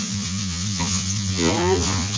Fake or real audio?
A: fake